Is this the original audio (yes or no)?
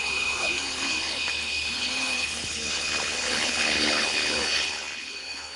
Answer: no